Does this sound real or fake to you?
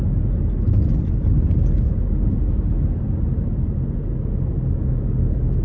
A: real